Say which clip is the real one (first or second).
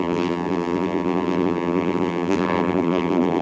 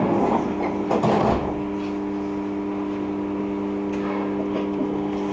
second